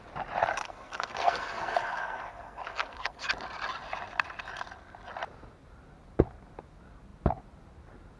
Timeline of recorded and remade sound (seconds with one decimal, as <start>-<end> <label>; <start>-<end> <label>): 0.0-0.5 recorded; 0.5-3.3 remade; 3.3-8.2 recorded